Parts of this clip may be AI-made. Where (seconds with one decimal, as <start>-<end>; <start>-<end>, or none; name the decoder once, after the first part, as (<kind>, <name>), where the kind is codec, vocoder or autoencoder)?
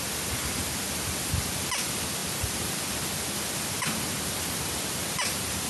none